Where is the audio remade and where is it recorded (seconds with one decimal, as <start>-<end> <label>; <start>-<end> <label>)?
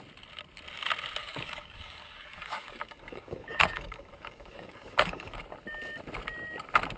0.0-1.2 recorded; 1.2-5.4 remade; 5.4-7.0 recorded